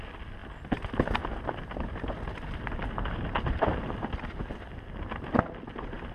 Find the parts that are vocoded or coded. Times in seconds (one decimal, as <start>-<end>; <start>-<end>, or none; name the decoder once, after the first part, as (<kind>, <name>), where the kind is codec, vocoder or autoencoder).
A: none